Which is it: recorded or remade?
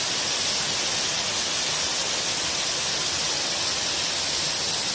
recorded